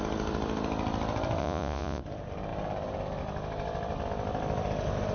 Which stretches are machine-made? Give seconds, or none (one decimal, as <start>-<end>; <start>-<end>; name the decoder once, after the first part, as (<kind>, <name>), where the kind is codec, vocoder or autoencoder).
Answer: 1.4-2.0 (vocoder, Vocos)